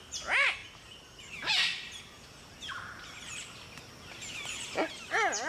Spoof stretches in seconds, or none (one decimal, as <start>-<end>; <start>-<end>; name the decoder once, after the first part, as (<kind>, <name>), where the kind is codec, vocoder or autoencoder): none